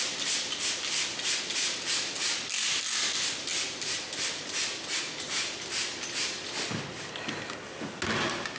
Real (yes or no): yes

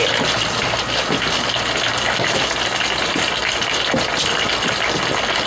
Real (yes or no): yes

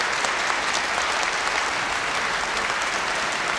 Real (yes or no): yes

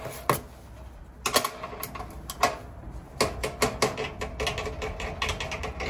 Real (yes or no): yes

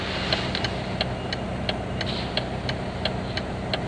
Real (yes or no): yes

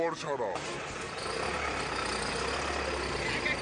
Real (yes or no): yes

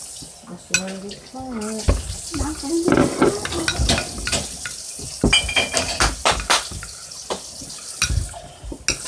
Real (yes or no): yes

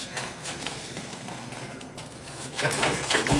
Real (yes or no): no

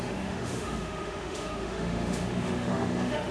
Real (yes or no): no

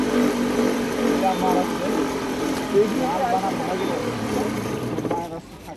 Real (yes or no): no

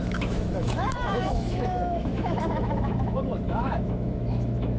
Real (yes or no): no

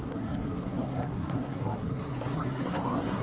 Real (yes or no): no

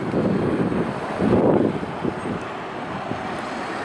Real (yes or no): yes